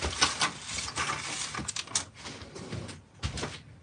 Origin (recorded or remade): recorded